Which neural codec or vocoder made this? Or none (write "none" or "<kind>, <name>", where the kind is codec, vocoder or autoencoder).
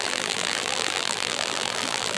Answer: vocoder, BigVGAN v2